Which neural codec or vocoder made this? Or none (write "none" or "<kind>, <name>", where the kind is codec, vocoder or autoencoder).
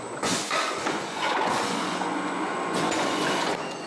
vocoder, Vocos